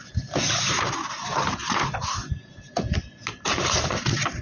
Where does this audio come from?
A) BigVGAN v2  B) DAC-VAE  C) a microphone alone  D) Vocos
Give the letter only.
C